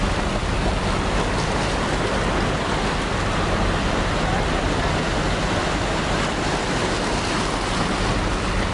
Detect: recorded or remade recorded